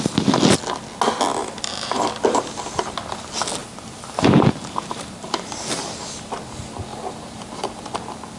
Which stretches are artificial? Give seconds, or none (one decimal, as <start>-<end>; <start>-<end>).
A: 1.4-2.1; 3.6-6.1; 6.9-7.7